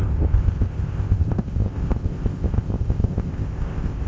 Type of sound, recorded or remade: remade